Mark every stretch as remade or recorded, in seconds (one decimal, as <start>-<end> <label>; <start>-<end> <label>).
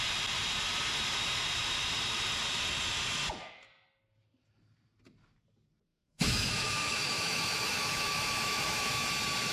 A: 0.0-5.9 recorded; 5.9-9.1 remade; 9.1-9.5 recorded